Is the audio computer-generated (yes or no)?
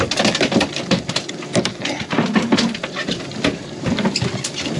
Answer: no